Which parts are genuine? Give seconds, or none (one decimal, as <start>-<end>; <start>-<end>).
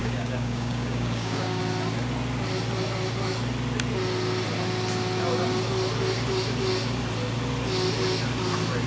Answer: 1.6-8.9